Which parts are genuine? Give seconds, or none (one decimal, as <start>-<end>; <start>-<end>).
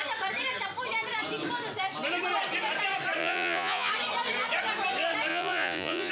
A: 0.0-3.2; 3.9-5.3